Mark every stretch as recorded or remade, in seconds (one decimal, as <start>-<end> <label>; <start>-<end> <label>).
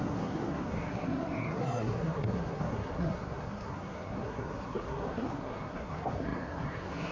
0.0-7.1 remade